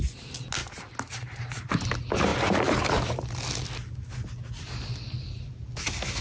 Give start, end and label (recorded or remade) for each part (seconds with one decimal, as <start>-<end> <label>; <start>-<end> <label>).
0.0-6.2 recorded